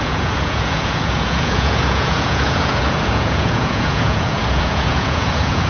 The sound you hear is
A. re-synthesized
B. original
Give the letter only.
A